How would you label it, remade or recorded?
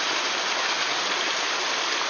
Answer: recorded